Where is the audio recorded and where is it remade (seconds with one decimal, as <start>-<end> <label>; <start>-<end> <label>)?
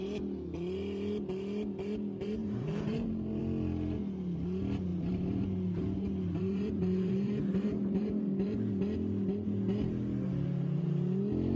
0.0-2.4 recorded; 2.4-3.4 remade; 3.4-4.9 recorded; 4.9-8.7 remade; 8.7-11.6 recorded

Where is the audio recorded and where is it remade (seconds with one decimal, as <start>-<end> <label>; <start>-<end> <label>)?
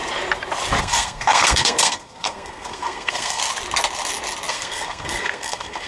0.0-0.8 recorded; 0.8-3.4 remade; 3.4-4.5 recorded; 4.5-5.9 remade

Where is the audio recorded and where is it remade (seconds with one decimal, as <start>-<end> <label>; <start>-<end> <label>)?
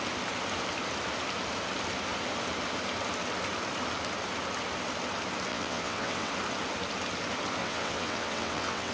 0.0-5.5 recorded; 5.5-6.3 remade; 6.3-7.6 recorded; 7.6-8.9 remade